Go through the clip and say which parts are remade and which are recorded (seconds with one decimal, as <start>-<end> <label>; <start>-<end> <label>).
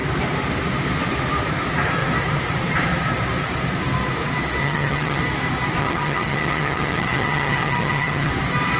0.0-4.6 recorded; 4.6-5.2 remade; 5.2-5.8 recorded; 5.8-8.3 remade; 8.3-8.8 recorded